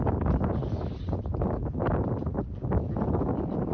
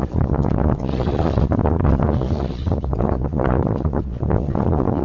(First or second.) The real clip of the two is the first